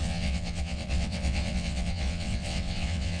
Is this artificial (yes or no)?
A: yes